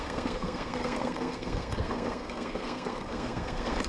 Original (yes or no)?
no